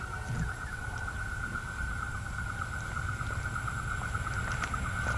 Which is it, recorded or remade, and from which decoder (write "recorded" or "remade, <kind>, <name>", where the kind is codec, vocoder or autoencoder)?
recorded